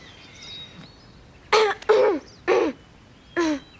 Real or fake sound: real